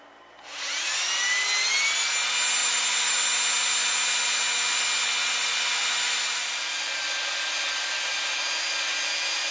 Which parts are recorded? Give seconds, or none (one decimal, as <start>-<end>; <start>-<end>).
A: 0.0-2.6; 3.2-9.5

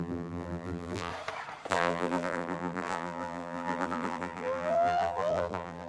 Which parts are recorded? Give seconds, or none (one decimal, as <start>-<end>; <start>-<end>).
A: 1.1-1.7

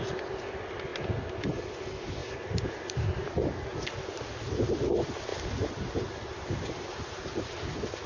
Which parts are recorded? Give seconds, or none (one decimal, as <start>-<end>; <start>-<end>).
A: 0.0-0.9; 1.7-2.2; 3.3-5.3; 7.0-8.1

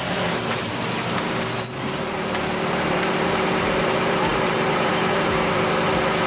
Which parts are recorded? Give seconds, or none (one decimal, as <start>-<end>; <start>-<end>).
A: none

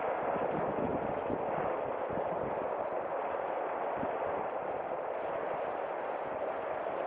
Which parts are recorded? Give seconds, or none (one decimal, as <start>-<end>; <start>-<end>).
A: 0.0-7.1